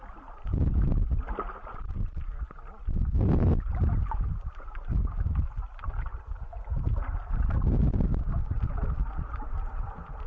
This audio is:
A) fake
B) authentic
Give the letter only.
B